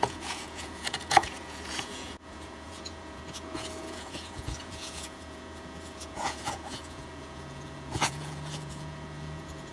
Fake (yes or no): yes